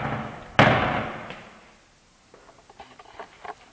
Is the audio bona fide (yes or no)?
yes